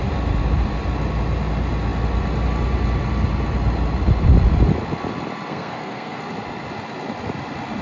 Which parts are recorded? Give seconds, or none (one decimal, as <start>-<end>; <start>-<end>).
0.0-5.5; 6.2-7.8

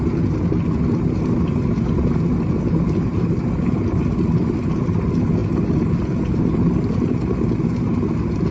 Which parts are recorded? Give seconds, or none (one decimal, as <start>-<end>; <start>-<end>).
0.0-8.5